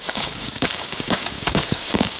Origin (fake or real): fake